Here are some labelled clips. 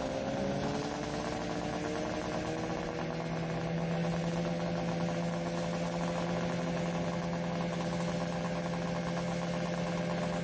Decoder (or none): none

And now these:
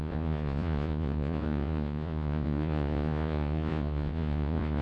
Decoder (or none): vocoder, Vocos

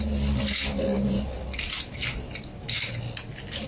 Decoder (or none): none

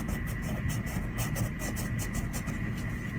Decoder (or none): none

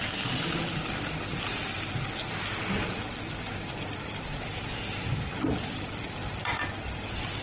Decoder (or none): none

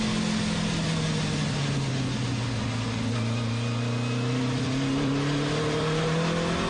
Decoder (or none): none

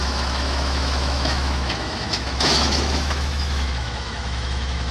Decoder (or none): autoencoder, DAC-VAE